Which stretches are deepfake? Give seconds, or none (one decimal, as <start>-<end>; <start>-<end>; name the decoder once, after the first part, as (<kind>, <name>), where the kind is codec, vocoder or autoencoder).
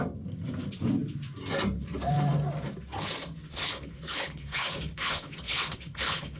3.5-6.4 (codec, HILCodec)